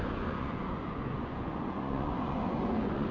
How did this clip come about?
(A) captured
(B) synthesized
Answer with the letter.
B